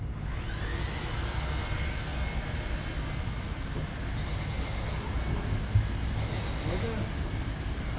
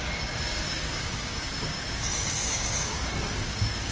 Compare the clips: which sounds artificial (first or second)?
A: second